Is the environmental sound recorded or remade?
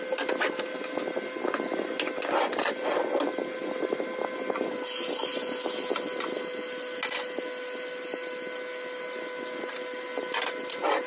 recorded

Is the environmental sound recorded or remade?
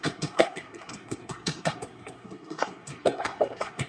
remade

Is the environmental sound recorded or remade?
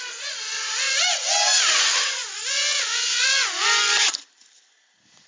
recorded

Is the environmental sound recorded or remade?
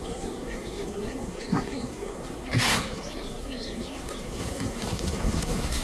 remade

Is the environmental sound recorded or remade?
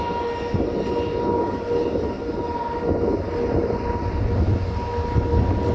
recorded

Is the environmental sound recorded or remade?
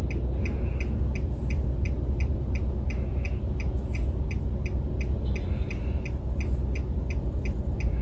recorded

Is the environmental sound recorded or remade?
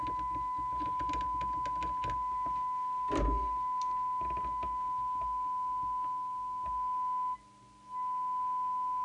recorded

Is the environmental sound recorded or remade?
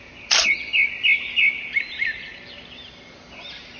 recorded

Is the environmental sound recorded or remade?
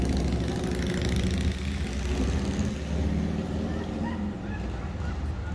recorded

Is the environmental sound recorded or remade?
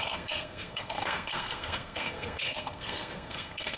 remade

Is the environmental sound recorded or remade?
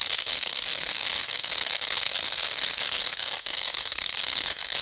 remade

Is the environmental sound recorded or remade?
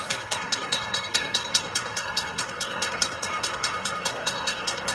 remade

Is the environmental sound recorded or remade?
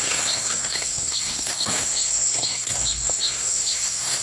remade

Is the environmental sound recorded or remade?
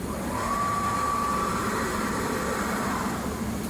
recorded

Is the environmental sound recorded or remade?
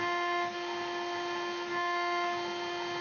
recorded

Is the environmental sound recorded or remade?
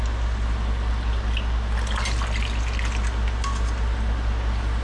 recorded